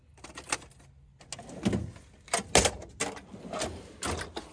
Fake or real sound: real